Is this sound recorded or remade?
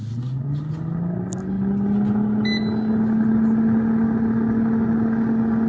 recorded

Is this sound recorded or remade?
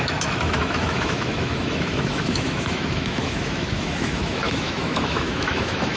remade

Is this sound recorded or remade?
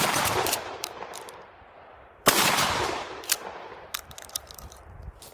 remade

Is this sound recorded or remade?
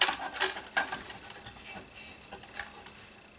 recorded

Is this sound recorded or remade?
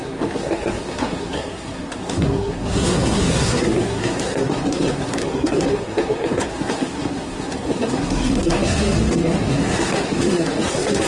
remade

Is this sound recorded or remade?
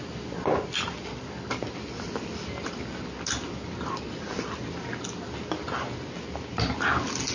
recorded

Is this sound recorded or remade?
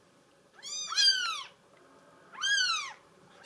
recorded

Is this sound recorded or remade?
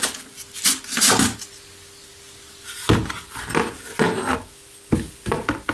recorded